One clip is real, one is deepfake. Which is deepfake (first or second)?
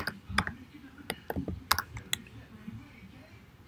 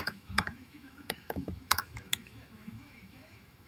second